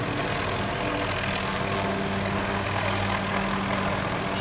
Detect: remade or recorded recorded